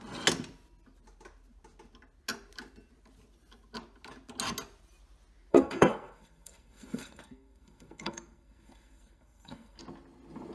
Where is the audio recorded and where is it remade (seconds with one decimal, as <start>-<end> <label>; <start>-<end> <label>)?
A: 0.0-5.5 recorded; 5.5-9.8 remade; 9.8-10.5 recorded

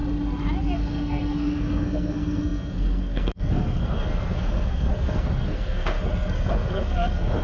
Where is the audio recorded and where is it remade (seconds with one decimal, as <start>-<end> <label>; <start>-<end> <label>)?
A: 0.0-0.6 recorded; 0.6-7.4 remade